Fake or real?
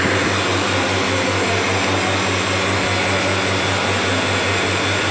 real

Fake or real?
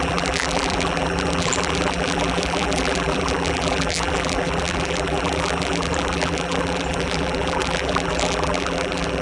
fake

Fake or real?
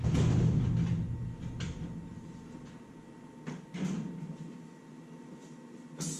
fake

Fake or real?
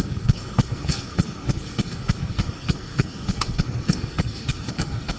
fake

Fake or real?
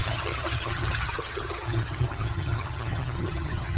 fake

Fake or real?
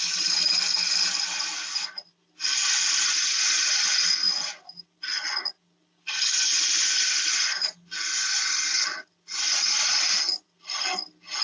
real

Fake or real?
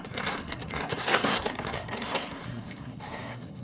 fake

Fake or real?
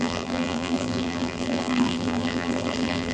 fake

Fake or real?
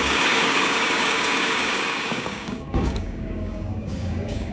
fake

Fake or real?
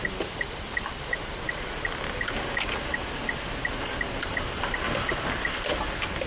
real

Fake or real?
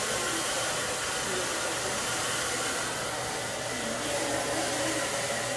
real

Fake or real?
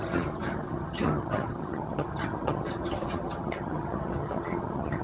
fake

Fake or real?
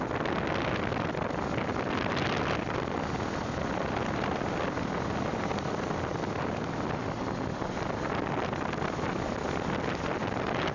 real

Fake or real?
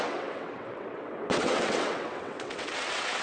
fake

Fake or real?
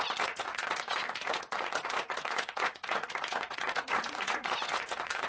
fake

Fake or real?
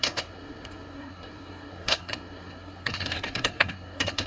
fake